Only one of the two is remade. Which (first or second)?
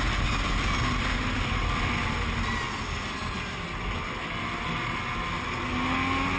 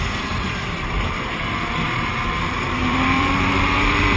second